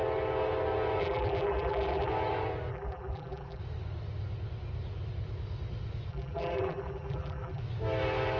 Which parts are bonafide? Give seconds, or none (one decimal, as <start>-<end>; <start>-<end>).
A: 0.0-1.0; 2.1-2.7; 3.6-6.1; 7.6-8.4